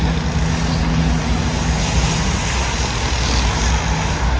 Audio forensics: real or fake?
real